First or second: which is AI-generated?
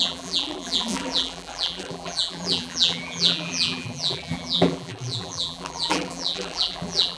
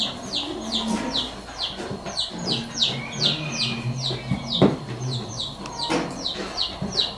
first